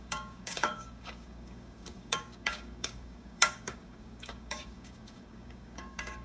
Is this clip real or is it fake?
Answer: fake